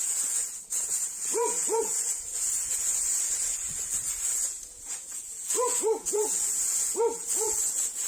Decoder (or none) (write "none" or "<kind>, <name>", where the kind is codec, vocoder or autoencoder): vocoder, Vocos